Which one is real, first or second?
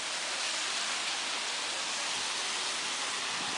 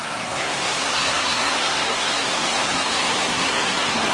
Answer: first